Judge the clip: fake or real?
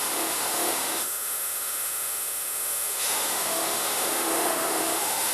fake